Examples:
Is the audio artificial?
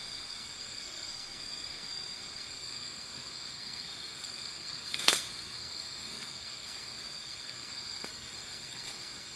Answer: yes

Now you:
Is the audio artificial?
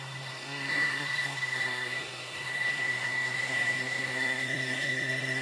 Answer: yes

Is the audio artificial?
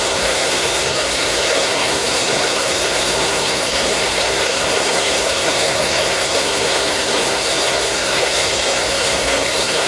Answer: yes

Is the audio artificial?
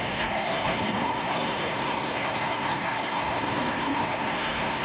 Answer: yes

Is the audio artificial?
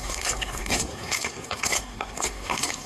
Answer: yes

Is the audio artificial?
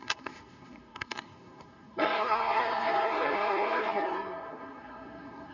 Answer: yes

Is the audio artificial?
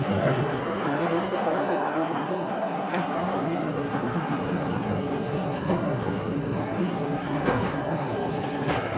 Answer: yes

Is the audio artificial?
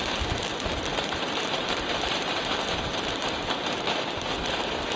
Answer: no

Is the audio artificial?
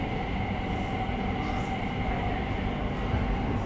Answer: no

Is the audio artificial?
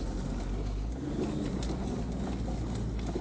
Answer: no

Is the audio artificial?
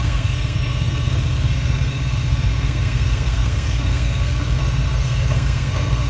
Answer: yes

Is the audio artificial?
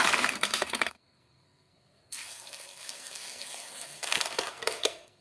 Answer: yes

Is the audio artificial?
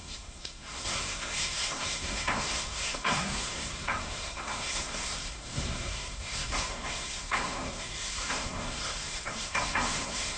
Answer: yes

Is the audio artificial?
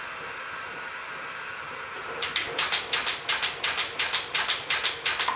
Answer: no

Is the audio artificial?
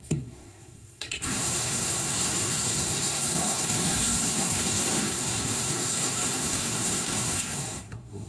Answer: yes